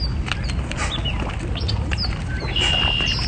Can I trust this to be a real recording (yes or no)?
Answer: yes